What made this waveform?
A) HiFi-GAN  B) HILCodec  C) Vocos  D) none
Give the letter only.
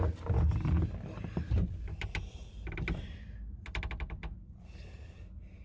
D